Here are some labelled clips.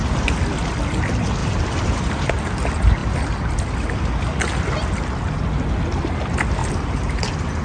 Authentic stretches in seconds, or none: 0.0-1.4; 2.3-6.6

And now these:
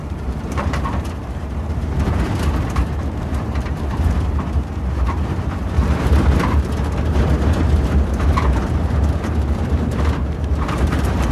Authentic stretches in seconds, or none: none